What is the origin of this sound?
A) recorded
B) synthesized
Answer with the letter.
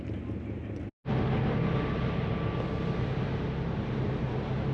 A